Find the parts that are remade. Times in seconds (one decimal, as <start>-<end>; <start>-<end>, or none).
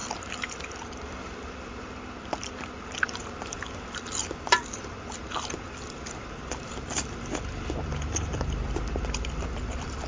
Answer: 3.4-10.1